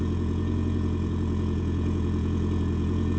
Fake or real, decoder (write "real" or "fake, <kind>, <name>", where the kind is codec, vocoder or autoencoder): fake, vocoder, Vocos